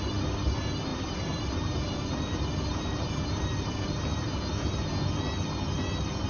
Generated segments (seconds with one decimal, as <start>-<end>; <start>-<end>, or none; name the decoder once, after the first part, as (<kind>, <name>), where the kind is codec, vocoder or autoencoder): 0.9-4.7 (vocoder, BigVGAN v2)